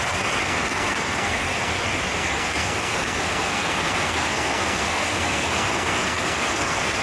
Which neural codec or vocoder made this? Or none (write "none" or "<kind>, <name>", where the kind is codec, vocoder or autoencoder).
codec, SNAC